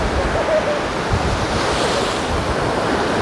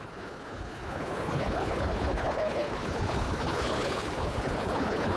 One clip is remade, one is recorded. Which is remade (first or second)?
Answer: second